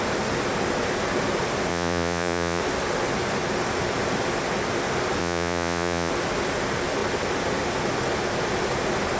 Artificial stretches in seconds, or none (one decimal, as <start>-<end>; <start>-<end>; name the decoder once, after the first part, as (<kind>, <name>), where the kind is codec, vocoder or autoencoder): 1.7-2.6 (vocoder, Vocos); 5.2-6.1